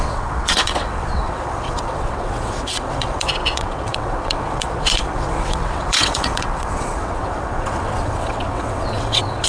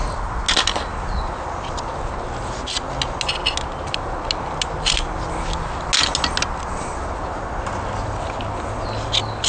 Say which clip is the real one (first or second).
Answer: second